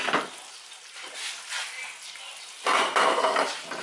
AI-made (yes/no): no